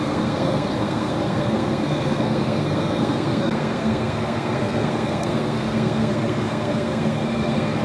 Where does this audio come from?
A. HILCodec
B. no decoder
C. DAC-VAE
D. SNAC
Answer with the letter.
D